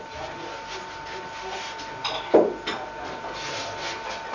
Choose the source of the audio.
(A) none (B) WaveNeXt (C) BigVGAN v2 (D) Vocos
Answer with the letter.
A